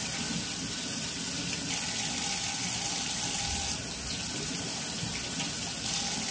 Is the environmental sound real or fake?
real